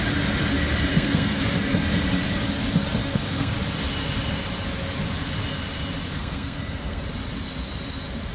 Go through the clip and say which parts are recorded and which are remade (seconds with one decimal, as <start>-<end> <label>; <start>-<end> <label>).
0.0-0.9 recorded; 0.9-1.4 remade; 1.4-3.0 recorded; 3.0-3.5 remade; 3.5-6.2 recorded; 6.2-7.0 remade; 7.0-8.3 recorded